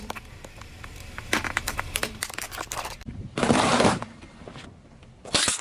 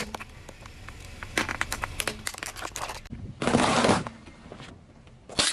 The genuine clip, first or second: second